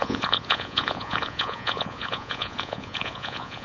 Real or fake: fake